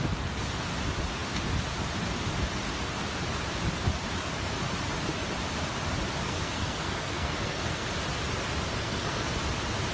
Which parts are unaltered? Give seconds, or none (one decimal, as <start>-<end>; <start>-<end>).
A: 0.0-6.2; 7.9-8.7; 9.3-9.9